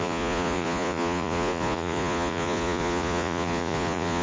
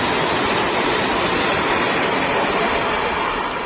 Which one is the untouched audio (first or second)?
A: second